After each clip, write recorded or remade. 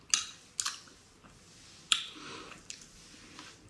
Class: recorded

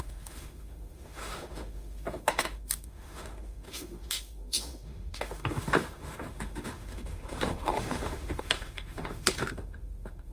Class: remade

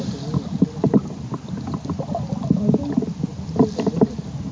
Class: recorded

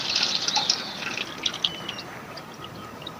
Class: recorded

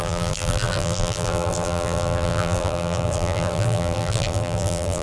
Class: remade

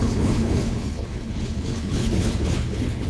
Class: remade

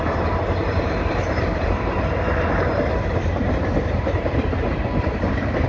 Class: remade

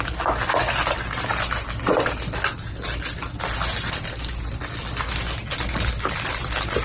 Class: recorded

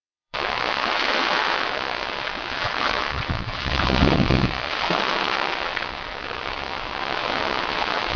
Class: remade